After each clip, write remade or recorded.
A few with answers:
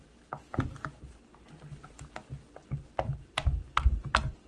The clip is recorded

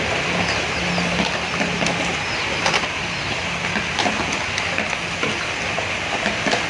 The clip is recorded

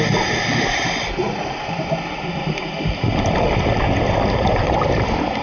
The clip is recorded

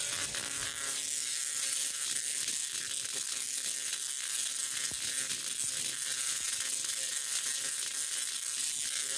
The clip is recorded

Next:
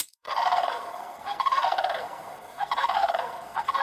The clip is remade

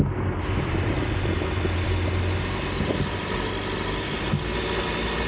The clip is recorded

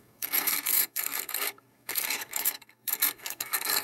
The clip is remade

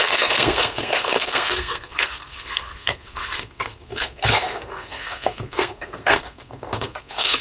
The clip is remade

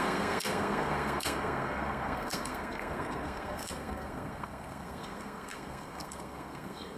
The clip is remade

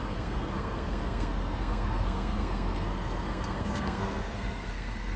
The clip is remade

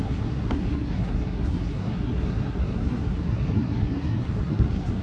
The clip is remade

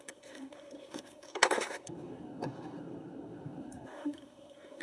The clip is remade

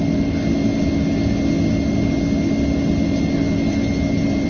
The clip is recorded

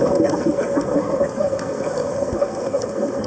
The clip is remade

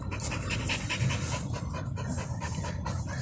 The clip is recorded